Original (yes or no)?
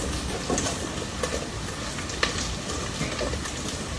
yes